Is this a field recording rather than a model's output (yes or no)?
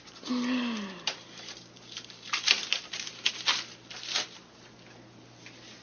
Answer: yes